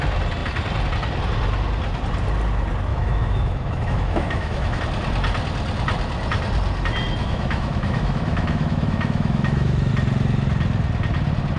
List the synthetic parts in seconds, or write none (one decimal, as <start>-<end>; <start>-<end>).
2.9-4.8; 7.2-9.9